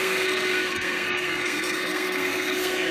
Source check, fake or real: fake